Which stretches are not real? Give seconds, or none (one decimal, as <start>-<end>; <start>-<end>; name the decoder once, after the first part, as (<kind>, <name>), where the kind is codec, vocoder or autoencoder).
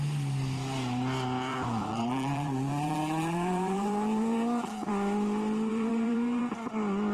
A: 1.5-4.9 (vocoder, BigVGAN v2); 5.7-6.4